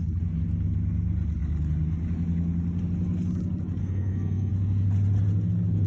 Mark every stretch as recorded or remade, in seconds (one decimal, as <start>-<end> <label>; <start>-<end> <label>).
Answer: 0.0-3.8 recorded; 3.8-4.5 remade; 4.5-5.9 recorded